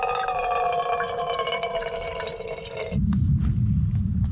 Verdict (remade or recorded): recorded